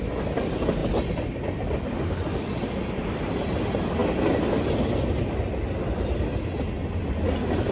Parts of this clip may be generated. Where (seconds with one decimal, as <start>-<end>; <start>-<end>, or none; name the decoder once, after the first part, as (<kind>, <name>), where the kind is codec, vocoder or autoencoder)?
0.8-2.4 (vocoder, BigVGAN v2)